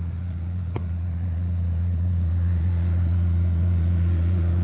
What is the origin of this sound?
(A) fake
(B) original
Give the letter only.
A